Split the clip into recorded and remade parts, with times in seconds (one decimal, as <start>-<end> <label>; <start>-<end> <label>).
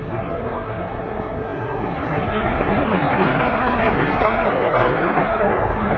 0.0-6.0 remade